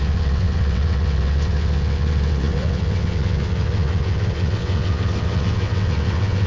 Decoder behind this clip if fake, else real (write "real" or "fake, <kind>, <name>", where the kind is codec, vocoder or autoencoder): fake, vocoder, WaveNeXt